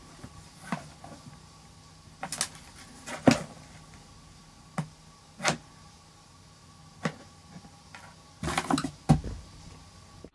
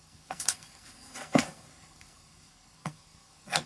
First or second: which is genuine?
first